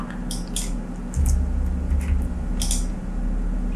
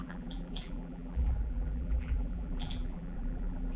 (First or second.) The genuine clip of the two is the first